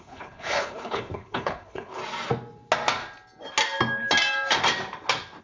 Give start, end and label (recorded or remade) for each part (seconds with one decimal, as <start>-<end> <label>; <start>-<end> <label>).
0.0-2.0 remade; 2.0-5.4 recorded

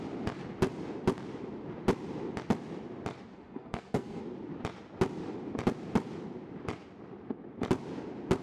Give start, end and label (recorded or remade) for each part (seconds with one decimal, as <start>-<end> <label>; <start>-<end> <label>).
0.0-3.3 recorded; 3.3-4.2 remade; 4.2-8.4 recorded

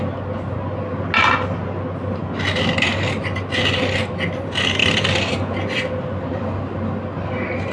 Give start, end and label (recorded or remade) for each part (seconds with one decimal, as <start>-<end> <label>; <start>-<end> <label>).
0.0-7.7 recorded

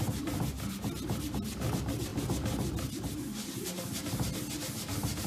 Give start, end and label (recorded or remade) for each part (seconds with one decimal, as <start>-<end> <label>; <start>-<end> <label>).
0.0-5.3 recorded

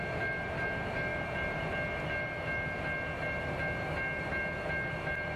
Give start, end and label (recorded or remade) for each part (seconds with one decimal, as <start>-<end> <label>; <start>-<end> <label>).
0.0-5.4 recorded

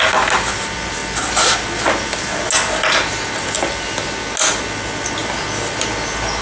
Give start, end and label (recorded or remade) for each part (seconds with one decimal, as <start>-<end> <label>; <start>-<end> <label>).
0.0-6.4 recorded